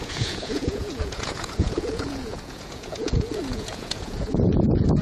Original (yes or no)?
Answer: no